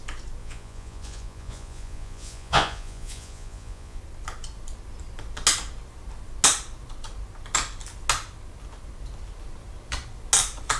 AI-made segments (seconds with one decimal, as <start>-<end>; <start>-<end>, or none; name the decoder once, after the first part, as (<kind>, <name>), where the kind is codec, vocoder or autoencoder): 0.4-4.0 (vocoder, Vocos)